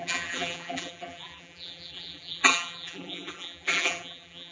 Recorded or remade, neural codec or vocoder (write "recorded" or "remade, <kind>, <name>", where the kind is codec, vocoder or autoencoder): remade, vocoder, BigVGAN v2